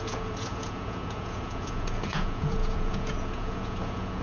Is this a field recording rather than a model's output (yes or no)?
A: no